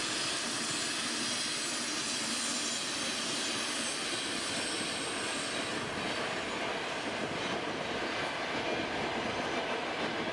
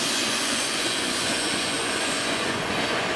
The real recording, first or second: first